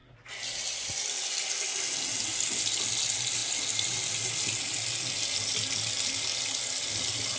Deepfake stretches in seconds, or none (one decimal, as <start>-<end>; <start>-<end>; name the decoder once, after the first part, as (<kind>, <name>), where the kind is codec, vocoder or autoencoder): none

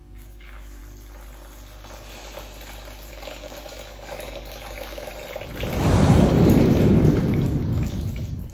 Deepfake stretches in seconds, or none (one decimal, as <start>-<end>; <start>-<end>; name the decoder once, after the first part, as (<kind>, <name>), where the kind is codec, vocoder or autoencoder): 0.0-0.8 (codec, DAC); 3.1-5.1; 6.1-8.5

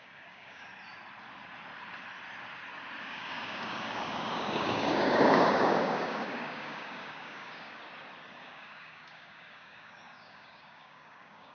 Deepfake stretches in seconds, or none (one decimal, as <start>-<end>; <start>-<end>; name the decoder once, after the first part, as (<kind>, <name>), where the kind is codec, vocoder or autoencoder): 0.0-0.7 (codec, DAC); 3.0-7.8; 8.4-11.5

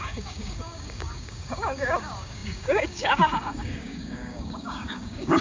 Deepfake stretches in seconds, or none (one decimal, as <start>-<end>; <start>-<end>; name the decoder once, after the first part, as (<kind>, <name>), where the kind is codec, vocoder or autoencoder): 0.0-5.4 (codec, DAC)

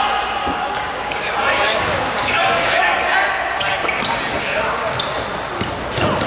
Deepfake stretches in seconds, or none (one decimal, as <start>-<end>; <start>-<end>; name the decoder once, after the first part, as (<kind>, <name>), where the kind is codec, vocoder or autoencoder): 0.4-2.8 (codec, DAC); 4.4-4.9

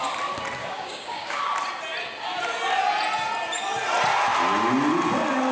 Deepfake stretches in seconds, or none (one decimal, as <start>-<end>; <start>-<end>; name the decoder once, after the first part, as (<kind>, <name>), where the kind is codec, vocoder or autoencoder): 0.6-1.4 (codec, DAC)

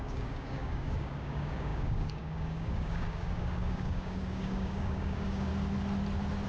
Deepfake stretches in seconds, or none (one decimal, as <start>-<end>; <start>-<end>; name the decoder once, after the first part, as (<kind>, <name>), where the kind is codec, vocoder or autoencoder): 0.0-5.5 (codec, DAC)